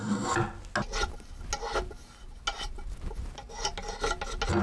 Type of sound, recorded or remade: recorded